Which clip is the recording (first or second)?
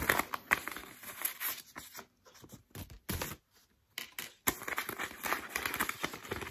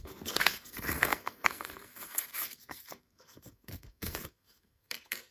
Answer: first